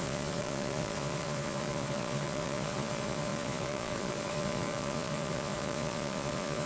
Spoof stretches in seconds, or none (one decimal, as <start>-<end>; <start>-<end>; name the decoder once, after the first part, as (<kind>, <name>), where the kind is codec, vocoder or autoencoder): 0.0-6.7 (vocoder, Vocos)

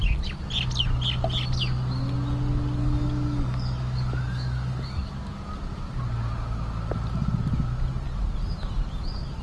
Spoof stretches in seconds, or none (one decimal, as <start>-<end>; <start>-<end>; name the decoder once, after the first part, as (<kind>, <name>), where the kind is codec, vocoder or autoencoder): 2.8-5.1 (codec, DAC)

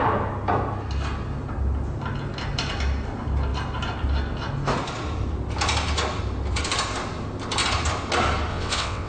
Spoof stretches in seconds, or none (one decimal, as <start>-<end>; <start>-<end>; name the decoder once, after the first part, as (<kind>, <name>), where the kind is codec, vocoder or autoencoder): 8.5-9.1 (vocoder, WaveNeXt)

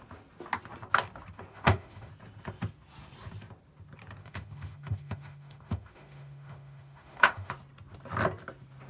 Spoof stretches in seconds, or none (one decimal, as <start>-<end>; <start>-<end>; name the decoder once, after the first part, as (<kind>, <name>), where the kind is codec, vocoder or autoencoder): 1.5-2.1 (autoencoder, DAC-VAE); 4.2-7.5